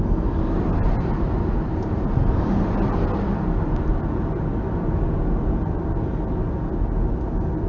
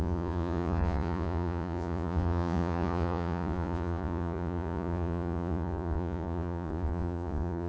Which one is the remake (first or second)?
second